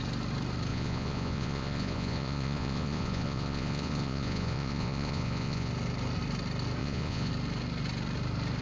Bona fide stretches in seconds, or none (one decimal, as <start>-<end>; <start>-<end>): 0.0-0.7; 5.7-6.8; 7.3-8.6